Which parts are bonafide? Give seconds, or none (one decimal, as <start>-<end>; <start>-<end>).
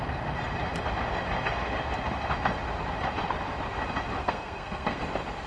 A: 0.0-4.2; 5.0-5.5